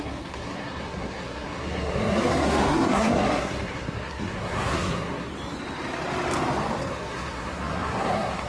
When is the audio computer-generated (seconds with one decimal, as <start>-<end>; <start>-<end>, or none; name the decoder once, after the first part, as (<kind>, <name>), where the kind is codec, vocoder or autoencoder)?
0.0-5.3 (codec, SNAC); 6.9-8.5